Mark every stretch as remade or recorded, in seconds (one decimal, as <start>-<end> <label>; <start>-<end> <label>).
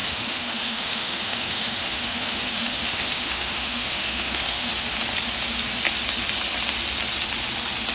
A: 0.0-4.7 remade; 4.7-7.9 recorded